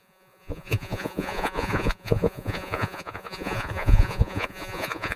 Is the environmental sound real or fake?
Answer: fake